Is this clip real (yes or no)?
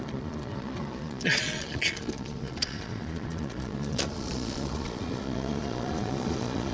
no